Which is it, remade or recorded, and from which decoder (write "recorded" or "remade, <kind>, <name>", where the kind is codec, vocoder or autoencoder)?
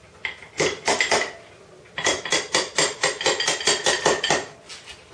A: recorded